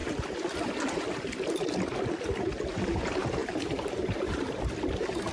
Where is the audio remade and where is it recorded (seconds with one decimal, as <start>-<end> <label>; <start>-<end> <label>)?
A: 0.0-3.4 recorded; 3.4-4.6 remade; 4.6-5.3 recorded